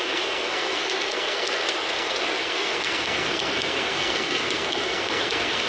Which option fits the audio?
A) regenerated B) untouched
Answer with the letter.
A